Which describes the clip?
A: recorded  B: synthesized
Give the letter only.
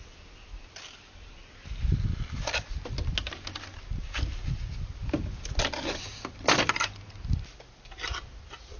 A